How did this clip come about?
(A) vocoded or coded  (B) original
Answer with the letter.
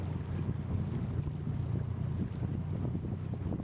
B